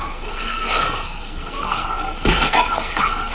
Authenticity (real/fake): fake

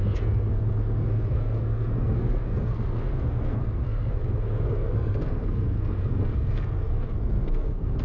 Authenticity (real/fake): fake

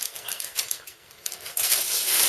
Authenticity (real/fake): fake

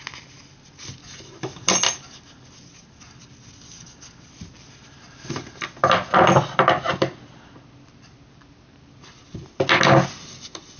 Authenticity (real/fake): real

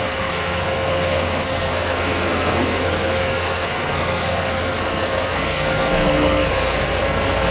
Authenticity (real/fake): fake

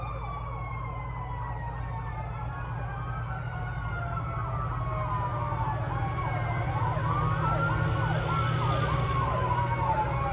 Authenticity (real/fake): real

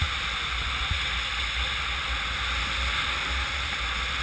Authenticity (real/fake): real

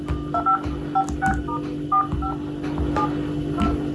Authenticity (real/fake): real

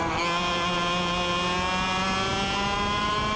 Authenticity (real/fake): real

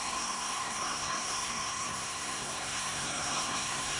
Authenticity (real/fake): fake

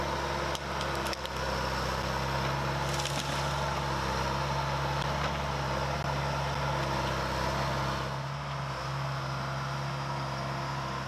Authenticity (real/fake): real